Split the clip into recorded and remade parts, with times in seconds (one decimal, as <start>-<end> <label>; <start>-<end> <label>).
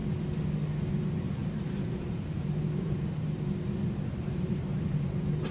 0.0-0.9 recorded; 0.9-5.5 remade